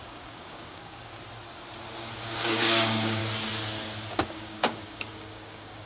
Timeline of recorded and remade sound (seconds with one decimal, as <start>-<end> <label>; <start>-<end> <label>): 0.0-1.1 remade; 1.1-2.0 recorded; 2.0-3.2 remade; 3.2-4.1 recorded; 4.1-5.9 remade